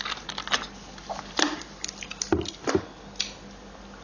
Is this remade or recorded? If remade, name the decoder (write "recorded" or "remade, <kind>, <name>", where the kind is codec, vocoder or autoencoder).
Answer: recorded